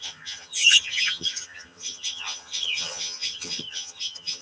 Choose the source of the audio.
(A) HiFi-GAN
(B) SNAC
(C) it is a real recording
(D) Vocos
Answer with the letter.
A